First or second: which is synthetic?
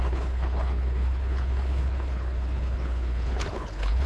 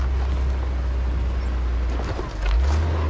first